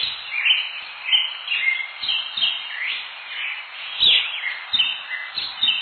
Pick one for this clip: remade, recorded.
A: recorded